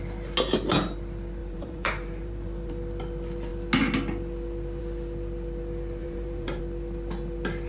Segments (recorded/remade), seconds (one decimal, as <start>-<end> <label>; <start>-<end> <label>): 0.0-1.4 recorded; 1.4-2.7 remade; 2.7-6.0 recorded; 6.0-6.6 remade; 6.6-7.7 recorded

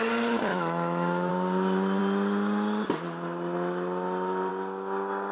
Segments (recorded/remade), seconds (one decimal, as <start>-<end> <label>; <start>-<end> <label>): 0.0-0.5 recorded; 0.5-1.3 remade; 1.3-5.3 recorded

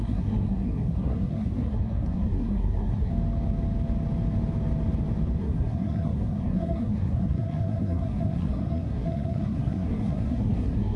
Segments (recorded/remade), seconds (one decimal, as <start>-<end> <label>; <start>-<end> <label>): 0.0-3.1 remade; 3.1-5.4 recorded; 5.4-11.0 remade

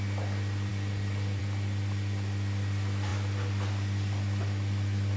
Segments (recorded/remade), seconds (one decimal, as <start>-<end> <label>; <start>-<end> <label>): 0.0-5.2 recorded

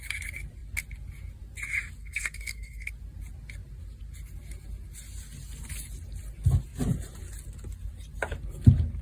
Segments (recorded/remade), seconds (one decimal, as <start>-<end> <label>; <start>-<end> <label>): 0.0-2.0 recorded; 2.0-2.9 remade; 2.9-9.0 recorded

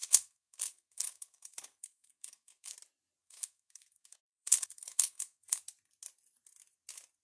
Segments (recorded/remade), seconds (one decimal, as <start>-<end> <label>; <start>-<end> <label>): 0.0-2.7 remade; 2.7-3.2 recorded; 3.2-5.6 remade; 5.6-7.2 recorded